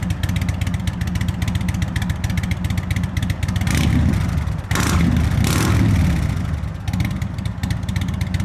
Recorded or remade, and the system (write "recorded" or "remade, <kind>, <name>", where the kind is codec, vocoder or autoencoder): recorded